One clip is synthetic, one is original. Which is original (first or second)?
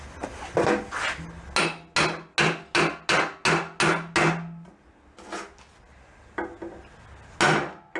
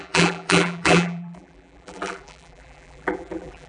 first